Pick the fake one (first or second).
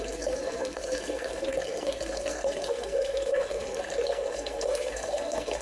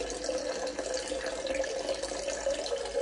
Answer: first